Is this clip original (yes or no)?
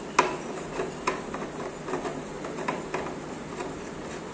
yes